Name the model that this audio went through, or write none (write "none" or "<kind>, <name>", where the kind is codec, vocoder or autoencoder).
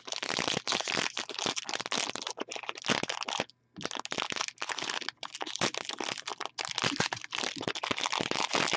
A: none